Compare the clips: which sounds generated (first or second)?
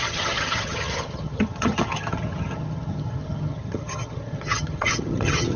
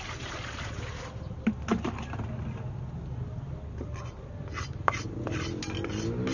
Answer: first